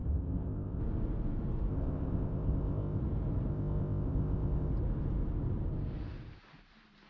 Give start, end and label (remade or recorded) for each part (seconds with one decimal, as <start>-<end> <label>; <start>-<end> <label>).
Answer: 0.0-0.8 remade; 0.8-1.7 recorded; 1.7-3.0 remade; 3.0-3.5 recorded; 3.5-4.7 remade; 4.7-7.1 recorded